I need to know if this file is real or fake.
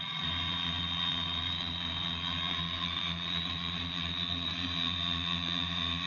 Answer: fake